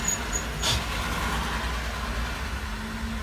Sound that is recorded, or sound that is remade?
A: recorded